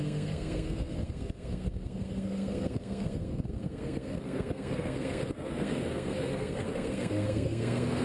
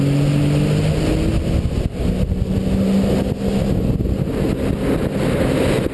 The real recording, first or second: second